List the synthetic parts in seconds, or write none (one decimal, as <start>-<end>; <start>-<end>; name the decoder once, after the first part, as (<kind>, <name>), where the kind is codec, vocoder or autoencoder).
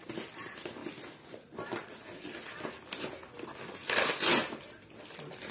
none